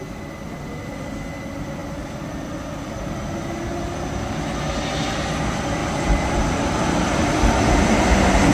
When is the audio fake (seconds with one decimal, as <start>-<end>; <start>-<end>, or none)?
1.8-3.1; 5.8-6.4